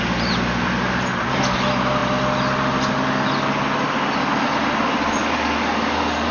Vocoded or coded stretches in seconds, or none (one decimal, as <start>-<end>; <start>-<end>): 5.2-6.3